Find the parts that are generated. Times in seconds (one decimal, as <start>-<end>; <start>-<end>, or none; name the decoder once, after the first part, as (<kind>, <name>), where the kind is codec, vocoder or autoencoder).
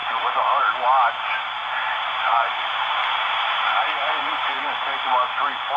0.0-0.6 (vocoder, BigVGAN v2); 1.6-4.6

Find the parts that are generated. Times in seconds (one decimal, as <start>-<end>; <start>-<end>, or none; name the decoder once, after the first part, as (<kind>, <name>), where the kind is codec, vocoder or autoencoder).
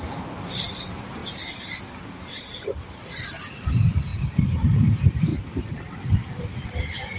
0.0-1.2 (vocoder, BigVGAN v2); 2.9-4.1; 4.7-5.3; 6.1-7.2